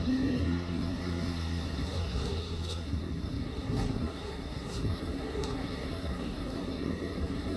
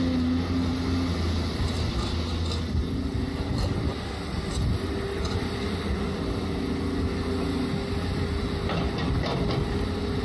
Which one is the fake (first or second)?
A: first